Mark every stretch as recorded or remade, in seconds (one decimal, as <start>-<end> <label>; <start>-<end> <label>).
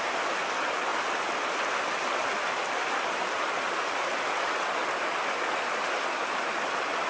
0.0-7.1 recorded